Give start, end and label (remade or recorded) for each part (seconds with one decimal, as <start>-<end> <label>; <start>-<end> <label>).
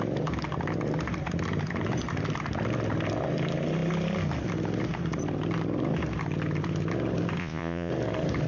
0.0-7.4 recorded; 7.4-7.9 remade; 7.9-8.5 recorded